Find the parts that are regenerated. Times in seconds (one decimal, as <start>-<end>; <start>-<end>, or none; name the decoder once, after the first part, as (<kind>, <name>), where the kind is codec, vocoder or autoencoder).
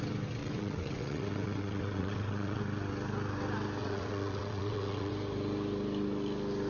0.4-2.6 (vocoder, WaveNeXt); 3.8-5.1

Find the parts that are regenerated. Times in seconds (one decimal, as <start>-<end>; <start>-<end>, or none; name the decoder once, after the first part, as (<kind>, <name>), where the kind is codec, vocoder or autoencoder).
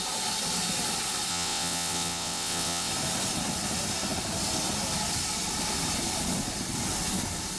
1.3-2.9 (vocoder, WaveNeXt)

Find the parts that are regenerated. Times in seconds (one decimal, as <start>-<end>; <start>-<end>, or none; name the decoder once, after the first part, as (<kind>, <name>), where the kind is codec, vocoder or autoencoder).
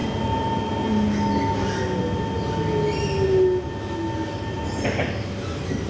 none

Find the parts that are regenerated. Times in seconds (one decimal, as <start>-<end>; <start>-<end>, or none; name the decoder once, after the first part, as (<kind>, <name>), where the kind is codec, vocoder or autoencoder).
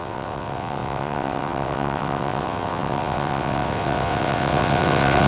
0.0-5.3 (vocoder, WaveNeXt)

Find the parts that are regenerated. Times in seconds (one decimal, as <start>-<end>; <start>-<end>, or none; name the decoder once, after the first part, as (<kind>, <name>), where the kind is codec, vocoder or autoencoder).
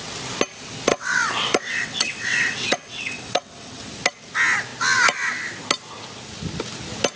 0.9-3.8 (vocoder, WaveNeXt)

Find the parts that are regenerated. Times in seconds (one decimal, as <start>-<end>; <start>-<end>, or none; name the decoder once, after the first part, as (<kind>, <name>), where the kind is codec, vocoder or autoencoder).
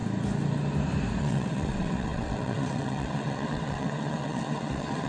1.2-5.1 (vocoder, WaveNeXt)